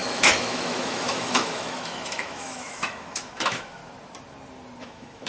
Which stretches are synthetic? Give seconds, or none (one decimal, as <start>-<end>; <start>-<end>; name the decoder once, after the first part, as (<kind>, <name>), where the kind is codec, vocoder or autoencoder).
0.0-3.8 (autoencoder, DAC-VAE); 4.8-5.3